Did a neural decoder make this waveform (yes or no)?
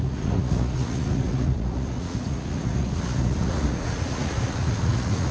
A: yes